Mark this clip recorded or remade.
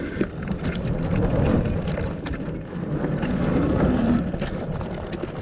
recorded